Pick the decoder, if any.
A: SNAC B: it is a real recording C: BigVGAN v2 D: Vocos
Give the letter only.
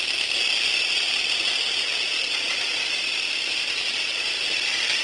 B